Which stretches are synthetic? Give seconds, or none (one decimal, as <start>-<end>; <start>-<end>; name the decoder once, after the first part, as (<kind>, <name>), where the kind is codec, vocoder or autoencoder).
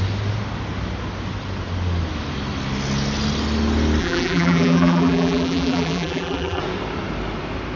4.0-6.6 (vocoder, BigVGAN v2)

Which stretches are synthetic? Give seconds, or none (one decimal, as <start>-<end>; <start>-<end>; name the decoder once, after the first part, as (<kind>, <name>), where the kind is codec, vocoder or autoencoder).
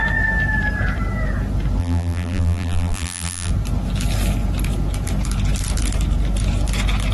1.8-3.5 (vocoder, BigVGAN v2)